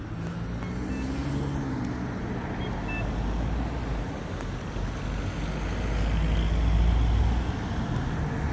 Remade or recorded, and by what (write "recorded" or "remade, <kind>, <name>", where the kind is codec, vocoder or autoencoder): recorded